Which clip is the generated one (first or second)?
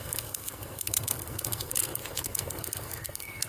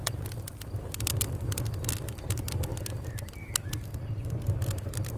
first